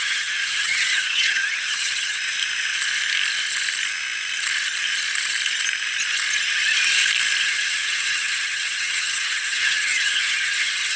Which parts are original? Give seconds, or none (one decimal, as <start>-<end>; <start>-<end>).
2.2-7.4